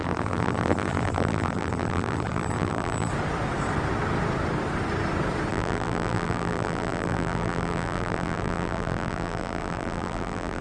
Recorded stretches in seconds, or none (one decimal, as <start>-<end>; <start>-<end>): 3.1-5.5